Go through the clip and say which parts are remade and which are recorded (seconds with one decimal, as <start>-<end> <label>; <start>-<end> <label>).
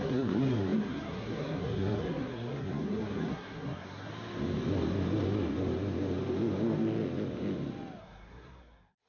0.0-4.1 remade; 4.1-8.0 recorded; 8.0-9.1 remade